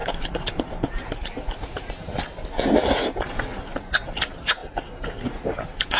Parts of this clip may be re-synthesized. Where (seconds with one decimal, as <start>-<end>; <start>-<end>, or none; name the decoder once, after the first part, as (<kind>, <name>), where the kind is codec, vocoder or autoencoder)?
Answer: 0.0-1.9 (vocoder, BigVGAN v2)